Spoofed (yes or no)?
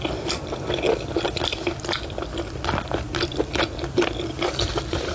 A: no